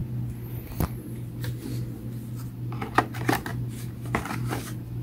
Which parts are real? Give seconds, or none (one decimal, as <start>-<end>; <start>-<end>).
0.0-5.0